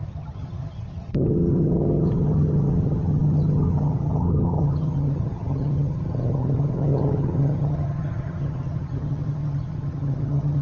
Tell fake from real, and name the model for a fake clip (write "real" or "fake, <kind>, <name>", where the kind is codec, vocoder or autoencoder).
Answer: fake, vocoder, HiFi-GAN